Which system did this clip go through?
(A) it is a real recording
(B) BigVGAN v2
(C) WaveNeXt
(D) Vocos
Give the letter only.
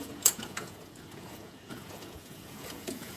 D